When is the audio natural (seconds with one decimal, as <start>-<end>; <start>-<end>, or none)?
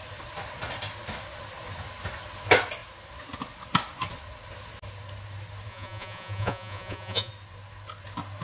0.0-5.7; 7.3-8.4